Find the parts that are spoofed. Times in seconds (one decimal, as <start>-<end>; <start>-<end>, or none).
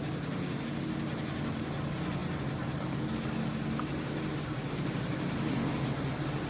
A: none